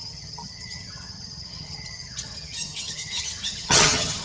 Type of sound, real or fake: fake